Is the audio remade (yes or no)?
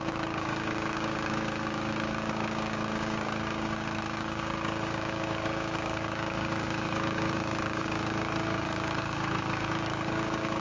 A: yes